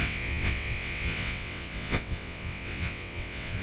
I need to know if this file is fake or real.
fake